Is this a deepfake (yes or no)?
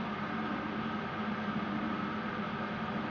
no